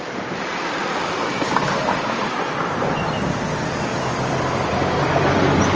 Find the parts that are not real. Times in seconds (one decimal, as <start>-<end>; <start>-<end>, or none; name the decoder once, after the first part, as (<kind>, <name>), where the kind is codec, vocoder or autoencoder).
3.9-5.3 (vocoder, BigVGAN v2)